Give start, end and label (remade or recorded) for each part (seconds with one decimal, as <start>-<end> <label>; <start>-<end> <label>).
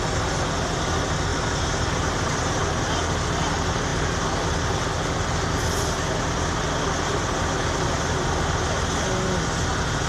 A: 0.0-1.3 recorded; 1.3-2.6 remade; 2.6-10.1 recorded